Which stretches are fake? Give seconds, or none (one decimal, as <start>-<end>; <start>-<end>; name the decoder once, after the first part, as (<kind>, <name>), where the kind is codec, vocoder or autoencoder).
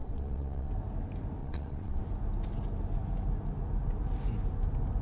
0.0-0.7 (vocoder, WaveNeXt); 1.4-2.0